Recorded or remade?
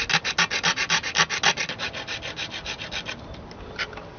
recorded